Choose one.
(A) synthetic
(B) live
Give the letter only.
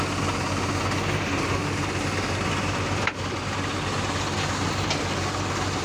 B